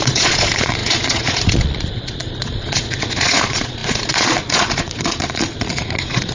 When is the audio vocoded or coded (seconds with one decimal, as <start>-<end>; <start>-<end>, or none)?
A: 0.0-6.3